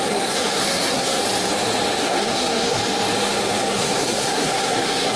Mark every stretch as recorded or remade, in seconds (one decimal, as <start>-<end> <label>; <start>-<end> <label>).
0.0-1.2 remade; 1.2-2.0 recorded; 2.0-2.8 remade; 2.8-3.6 recorded; 3.6-5.2 remade